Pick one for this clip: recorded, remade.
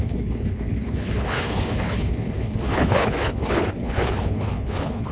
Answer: remade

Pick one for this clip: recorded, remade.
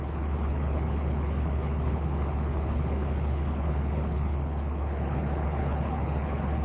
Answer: remade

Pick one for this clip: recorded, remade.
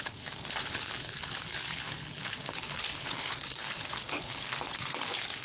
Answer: remade